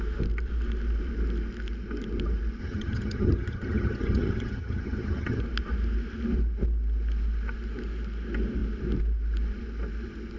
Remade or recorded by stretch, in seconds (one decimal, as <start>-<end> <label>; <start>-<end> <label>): 0.0-2.6 recorded; 2.6-5.4 remade; 5.4-10.4 recorded